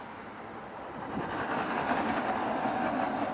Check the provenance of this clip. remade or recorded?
recorded